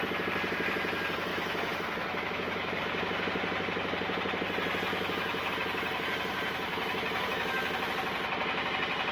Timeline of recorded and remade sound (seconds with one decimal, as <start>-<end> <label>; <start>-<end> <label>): 0.0-1.3 recorded; 1.3-2.8 remade; 2.8-4.9 recorded; 4.9-5.5 remade; 5.5-6.7 recorded; 6.7-7.9 remade; 7.9-9.1 recorded

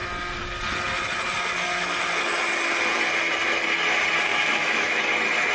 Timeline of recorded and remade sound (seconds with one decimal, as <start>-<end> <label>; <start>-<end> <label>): 0.0-4.3 recorded; 4.3-5.0 remade; 5.0-5.5 recorded